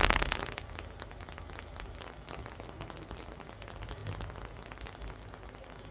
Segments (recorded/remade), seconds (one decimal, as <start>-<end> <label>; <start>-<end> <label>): 0.0-5.9 recorded

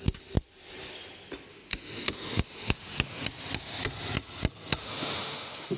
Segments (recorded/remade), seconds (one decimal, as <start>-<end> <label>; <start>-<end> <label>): 0.0-1.5 recorded; 1.5-3.2 remade; 3.2-4.8 recorded; 4.8-5.8 remade

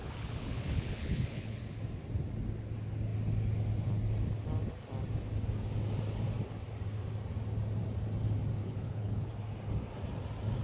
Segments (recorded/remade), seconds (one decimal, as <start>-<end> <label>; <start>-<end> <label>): 0.0-1.6 remade; 1.6-8.6 recorded; 8.6-9.3 remade; 9.3-10.6 recorded

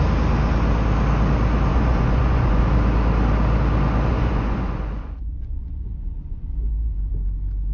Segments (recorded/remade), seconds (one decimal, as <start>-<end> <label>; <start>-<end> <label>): 0.0-1.7 recorded; 1.7-2.6 remade; 2.6-4.1 recorded; 4.1-7.1 remade; 7.1-7.7 recorded

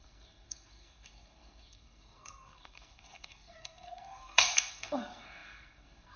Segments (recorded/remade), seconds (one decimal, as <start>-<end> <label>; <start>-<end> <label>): 0.0-6.2 remade

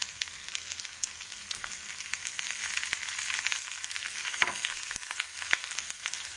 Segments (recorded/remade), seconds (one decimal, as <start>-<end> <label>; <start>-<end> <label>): 0.0-2.6 remade; 2.6-3.4 recorded; 3.4-6.4 remade

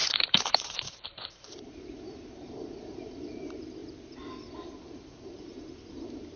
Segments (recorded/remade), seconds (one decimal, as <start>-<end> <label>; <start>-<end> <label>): 0.0-6.4 remade

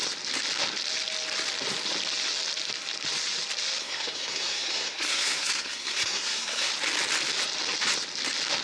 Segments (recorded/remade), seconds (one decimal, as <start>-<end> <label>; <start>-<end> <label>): 0.0-3.8 recorded; 3.8-6.7 remade; 6.7-8.6 recorded